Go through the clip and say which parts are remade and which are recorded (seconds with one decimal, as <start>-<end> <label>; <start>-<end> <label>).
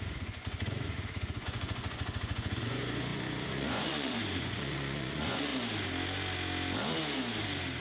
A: 0.0-5.5 remade; 5.5-7.8 recorded